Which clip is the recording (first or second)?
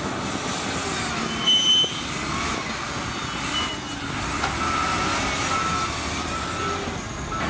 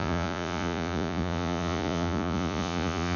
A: first